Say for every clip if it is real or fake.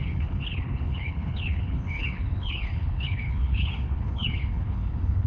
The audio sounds fake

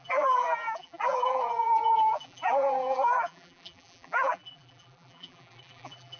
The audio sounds fake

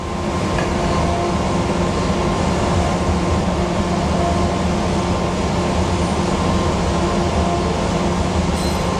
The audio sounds real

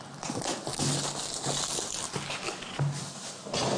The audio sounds real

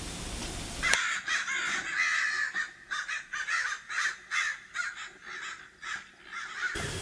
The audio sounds real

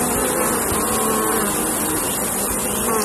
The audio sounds real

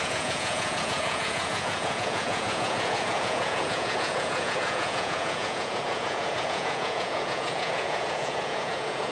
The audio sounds fake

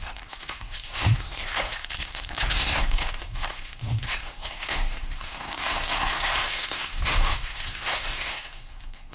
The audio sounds fake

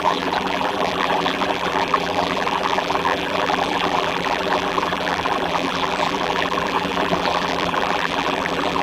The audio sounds fake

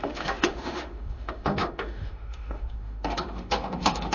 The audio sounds fake